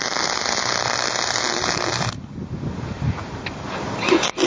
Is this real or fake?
real